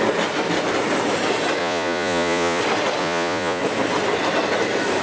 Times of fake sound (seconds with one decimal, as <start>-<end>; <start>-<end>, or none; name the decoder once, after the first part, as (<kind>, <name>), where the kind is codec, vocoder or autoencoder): 1.6-2.6 (vocoder, Vocos); 3.0-3.6